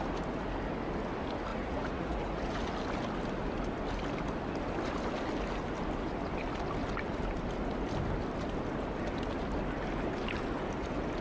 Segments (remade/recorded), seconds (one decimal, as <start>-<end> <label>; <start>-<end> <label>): 0.0-1.5 recorded; 1.5-2.5 remade; 2.5-11.2 recorded